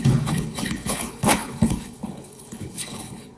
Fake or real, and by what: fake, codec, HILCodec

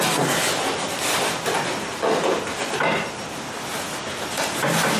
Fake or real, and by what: real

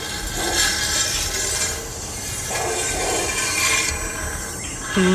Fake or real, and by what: fake, vocoder, BigVGAN v2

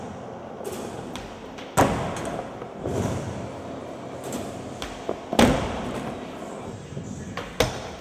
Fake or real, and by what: real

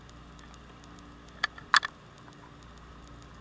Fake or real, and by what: real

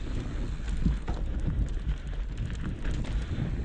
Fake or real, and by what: real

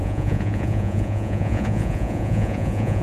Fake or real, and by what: fake, vocoder, Vocos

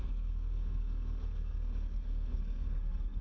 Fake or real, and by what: fake, codec, SNAC